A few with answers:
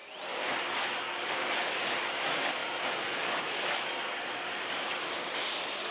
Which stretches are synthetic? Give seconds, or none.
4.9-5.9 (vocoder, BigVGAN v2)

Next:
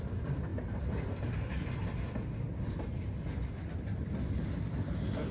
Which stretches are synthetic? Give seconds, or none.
none

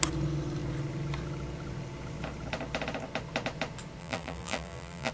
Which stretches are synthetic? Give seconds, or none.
4.0-5.1 (vocoder, BigVGAN v2)

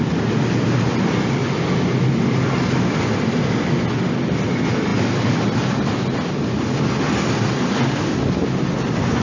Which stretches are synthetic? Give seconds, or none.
none

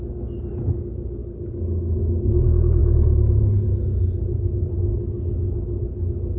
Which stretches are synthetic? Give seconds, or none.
none

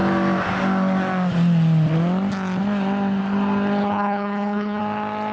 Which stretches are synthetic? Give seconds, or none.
3.8-4.8 (codec, HILCodec)

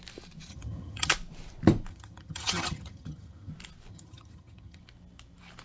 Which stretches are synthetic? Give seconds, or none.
0.5-1.1 (vocoder, HiFi-GAN); 1.9-3.5; 3.9-4.8

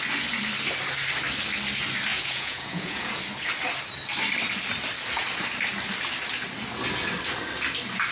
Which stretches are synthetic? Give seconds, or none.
2.1-3.2 (vocoder, Vocos)